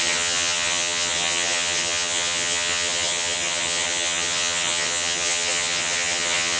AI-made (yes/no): yes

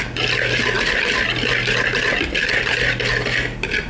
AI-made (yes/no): no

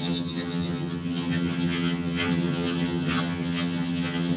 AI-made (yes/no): yes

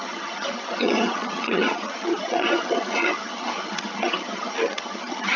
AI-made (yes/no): yes